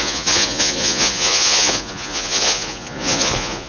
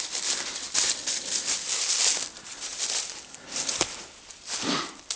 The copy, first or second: first